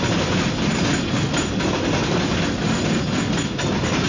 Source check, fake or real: real